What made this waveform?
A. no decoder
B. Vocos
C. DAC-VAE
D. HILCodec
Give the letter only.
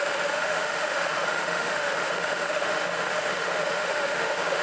C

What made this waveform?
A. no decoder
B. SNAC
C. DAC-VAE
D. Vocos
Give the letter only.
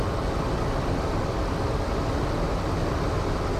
A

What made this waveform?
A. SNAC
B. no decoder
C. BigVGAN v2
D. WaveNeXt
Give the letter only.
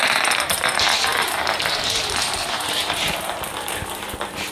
C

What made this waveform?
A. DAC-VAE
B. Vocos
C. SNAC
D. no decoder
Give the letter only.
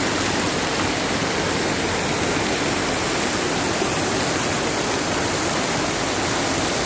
D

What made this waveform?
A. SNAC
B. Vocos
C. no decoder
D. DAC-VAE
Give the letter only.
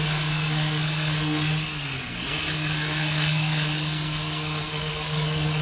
A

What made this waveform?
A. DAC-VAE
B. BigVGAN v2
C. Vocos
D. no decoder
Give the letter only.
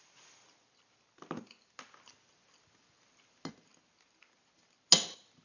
D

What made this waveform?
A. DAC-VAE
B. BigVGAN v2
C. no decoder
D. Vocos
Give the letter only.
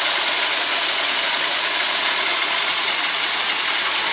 D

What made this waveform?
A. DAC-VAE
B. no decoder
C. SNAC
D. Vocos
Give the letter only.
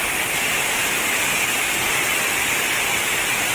B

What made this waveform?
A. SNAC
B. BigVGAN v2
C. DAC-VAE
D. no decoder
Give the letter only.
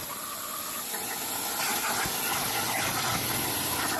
D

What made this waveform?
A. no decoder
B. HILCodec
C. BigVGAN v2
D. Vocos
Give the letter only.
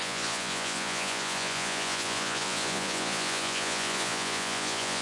D